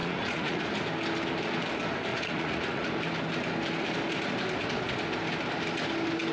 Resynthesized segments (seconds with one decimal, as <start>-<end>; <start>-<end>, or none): 0.0-0.6; 2.1-2.9